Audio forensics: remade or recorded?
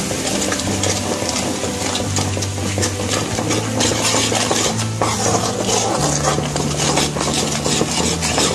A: recorded